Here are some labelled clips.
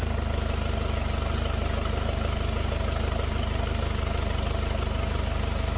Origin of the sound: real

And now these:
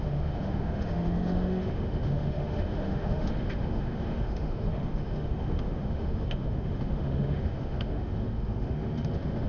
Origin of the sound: fake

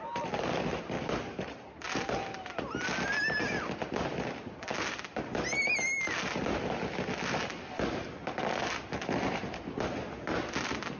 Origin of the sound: real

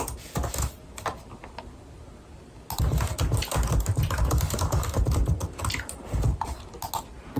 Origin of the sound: real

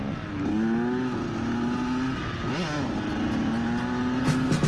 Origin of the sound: real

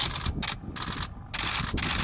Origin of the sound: real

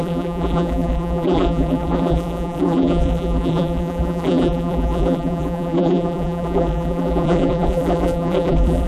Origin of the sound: fake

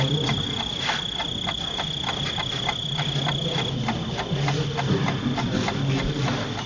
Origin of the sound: real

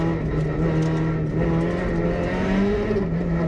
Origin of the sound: real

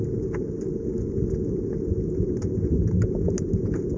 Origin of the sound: real